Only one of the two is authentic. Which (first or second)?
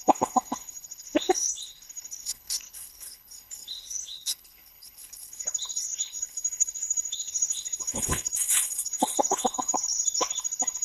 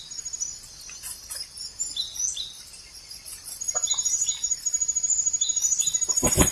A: second